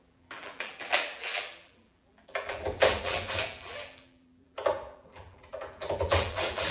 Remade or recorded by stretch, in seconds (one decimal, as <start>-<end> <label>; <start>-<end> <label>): 0.0-6.7 remade